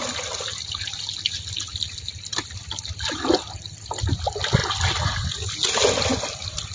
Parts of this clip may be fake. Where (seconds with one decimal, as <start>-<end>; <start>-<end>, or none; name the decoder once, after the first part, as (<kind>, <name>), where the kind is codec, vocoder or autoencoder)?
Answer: none